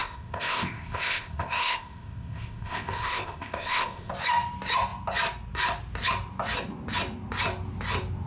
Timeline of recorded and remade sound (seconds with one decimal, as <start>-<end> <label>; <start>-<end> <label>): 0.0-4.1 remade; 4.1-8.3 recorded